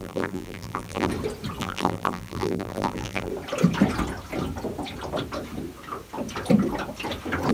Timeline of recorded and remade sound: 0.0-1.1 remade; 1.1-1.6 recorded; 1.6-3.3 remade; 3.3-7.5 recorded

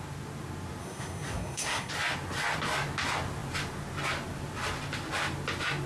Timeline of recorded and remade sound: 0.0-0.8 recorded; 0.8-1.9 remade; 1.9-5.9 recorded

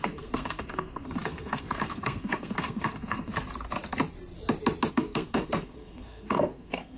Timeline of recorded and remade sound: 0.0-3.3 remade; 3.3-4.9 recorded; 4.9-7.0 remade

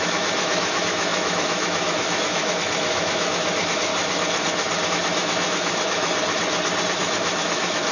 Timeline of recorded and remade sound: 0.0-3.9 remade; 3.9-4.9 recorded; 4.9-6.1 remade; 6.1-7.0 recorded; 7.0-7.9 remade

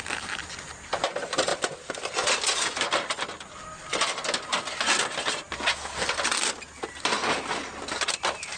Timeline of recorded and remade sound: 0.0-8.6 recorded

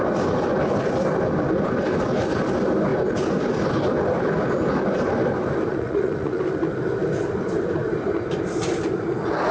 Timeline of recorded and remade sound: 0.0-5.7 recorded; 5.7-6.4 remade; 6.4-9.5 recorded

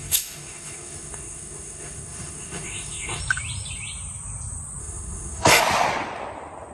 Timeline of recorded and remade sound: 0.0-3.2 remade; 3.2-4.8 recorded; 4.8-5.6 remade; 5.6-6.7 recorded